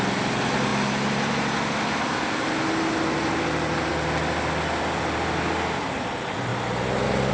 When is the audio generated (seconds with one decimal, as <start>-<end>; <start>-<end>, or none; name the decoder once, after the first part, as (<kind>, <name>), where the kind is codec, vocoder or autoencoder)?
none